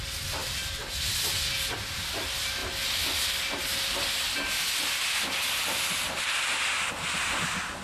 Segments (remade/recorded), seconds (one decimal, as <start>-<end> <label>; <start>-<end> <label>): 0.0-7.8 recorded